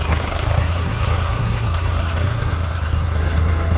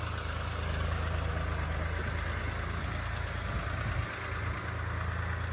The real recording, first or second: second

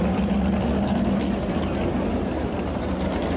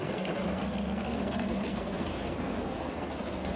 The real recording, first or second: first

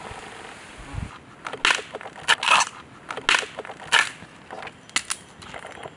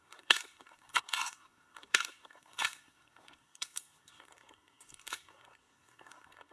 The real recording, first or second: first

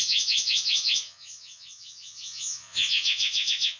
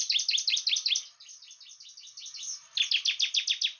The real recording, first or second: second